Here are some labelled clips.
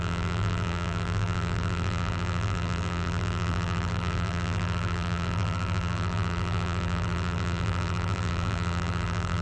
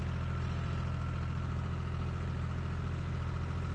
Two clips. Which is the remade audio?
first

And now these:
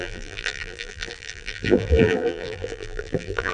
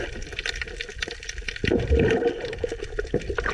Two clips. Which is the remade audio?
first